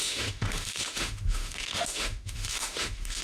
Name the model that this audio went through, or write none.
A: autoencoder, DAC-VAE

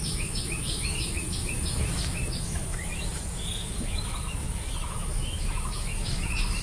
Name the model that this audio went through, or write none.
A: autoencoder, DAC-VAE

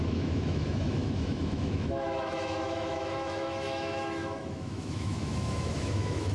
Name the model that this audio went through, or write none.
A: autoencoder, DAC-VAE